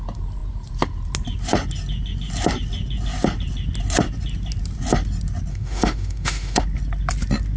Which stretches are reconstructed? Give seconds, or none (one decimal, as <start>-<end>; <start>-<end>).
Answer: 5.5-6.6